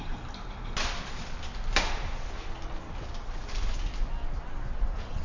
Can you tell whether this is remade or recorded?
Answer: recorded